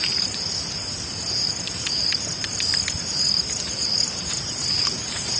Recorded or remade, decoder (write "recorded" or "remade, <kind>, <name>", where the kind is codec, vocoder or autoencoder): remade, vocoder, BigVGAN v2